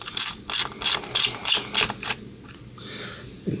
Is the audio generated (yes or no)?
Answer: no